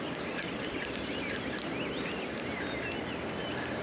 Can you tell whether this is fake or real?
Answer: real